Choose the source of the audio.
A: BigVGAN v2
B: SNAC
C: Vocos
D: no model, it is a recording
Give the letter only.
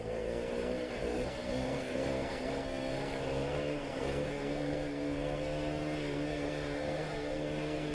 B